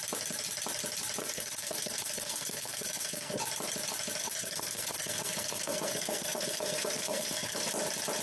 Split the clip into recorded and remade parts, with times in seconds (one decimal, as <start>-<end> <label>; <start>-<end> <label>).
0.0-1.2 recorded; 1.2-3.4 remade; 3.4-4.2 recorded; 4.2-7.7 remade; 7.7-8.2 recorded